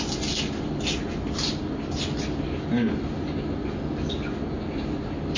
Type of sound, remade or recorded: recorded